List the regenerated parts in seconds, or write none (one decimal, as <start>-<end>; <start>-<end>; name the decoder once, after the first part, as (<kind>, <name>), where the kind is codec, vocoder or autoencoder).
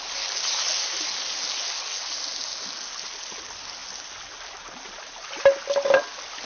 none